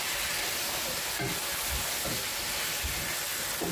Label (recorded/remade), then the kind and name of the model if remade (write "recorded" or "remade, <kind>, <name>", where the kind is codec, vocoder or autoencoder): recorded